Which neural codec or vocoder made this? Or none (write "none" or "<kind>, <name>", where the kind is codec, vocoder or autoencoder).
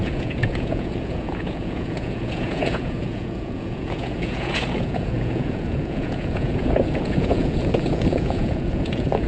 vocoder, Vocos